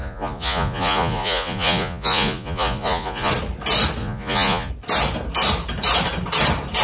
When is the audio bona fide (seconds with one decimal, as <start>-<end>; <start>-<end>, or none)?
3.3-4.0; 4.7-6.8